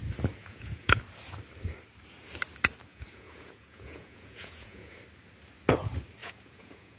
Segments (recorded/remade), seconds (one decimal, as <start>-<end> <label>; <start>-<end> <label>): 0.0-0.4 recorded; 0.4-1.0 remade; 1.0-2.9 recorded; 2.9-5.0 remade; 5.0-6.2 recorded; 6.2-7.0 remade